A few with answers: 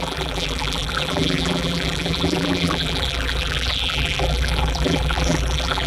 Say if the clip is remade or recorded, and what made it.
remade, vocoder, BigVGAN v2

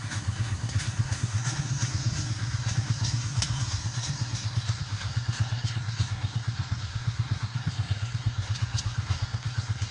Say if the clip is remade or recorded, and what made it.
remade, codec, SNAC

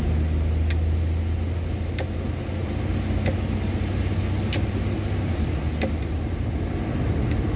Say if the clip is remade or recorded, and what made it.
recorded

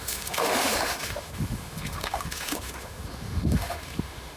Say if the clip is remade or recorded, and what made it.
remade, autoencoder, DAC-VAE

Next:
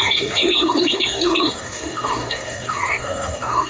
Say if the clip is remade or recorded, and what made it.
remade, codec, SNAC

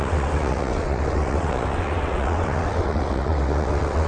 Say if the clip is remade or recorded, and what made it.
remade, vocoder, WaveNeXt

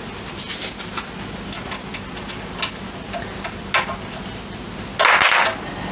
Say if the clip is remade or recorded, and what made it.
recorded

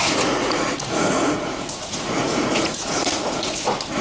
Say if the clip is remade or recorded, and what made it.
remade, vocoder, Vocos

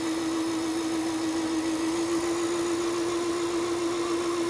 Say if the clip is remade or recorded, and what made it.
recorded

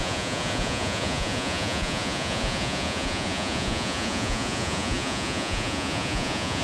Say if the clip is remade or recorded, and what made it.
remade, vocoder, Vocos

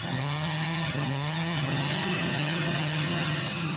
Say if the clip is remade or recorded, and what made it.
remade, vocoder, HiFi-GAN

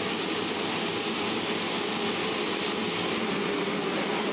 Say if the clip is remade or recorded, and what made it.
recorded